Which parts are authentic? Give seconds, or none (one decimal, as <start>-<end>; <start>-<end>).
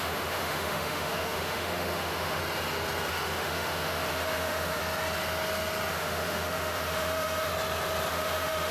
2.4-3.1; 4.8-5.9; 7.5-8.1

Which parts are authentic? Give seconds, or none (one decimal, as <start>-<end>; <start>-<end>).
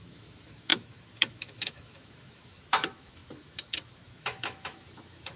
none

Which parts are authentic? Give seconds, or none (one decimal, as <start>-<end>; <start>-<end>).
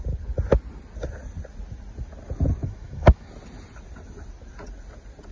0.0-2.6; 3.3-5.3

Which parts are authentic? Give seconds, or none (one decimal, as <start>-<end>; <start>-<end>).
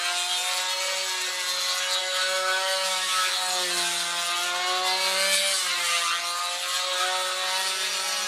0.0-2.0; 3.3-8.3